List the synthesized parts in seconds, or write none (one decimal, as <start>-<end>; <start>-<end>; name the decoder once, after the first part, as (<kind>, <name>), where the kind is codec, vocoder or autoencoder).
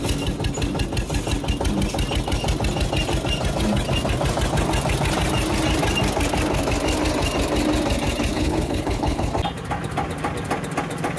8.3-9.3 (codec, HILCodec)